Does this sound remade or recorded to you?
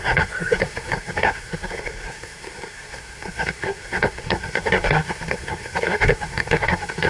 remade